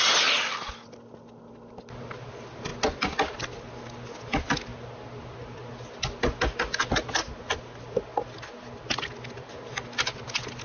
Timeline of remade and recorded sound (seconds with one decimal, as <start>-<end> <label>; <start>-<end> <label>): 0.0-10.6 recorded